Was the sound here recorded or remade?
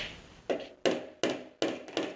recorded